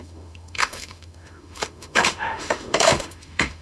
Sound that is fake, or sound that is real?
fake